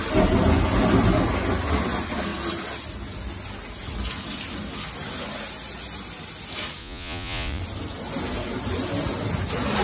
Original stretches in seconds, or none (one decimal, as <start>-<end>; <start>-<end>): 0.0-6.8; 7.6-9.8